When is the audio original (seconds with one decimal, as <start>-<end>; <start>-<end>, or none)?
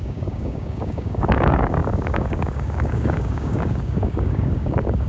none